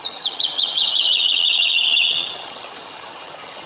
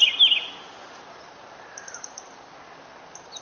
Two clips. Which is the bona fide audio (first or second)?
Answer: second